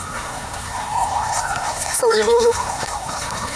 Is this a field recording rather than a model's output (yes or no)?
no